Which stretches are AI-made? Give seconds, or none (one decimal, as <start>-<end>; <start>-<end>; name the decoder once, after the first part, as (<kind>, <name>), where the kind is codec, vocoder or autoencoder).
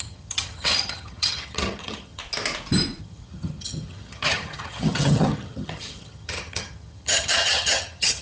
0.0-2.2 (vocoder, HiFi-GAN); 3.0-8.2